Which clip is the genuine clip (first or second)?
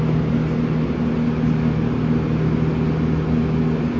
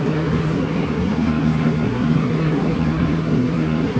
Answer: first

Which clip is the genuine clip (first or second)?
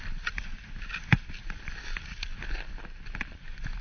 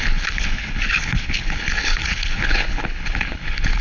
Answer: first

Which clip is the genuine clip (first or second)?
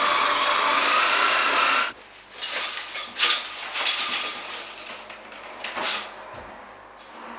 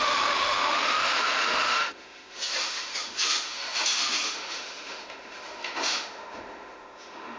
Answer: first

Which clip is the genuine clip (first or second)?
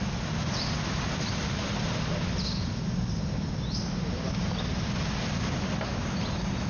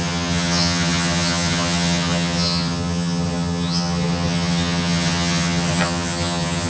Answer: first